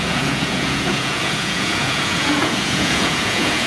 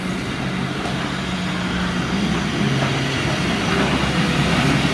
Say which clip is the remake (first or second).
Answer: first